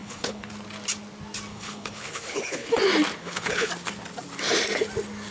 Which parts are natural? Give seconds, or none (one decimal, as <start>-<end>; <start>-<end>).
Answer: 0.5-1.5; 2.8-3.2; 3.7-5.3